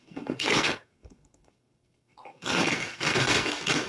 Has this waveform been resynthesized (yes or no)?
yes